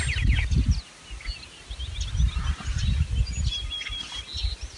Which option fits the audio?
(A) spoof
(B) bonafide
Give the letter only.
B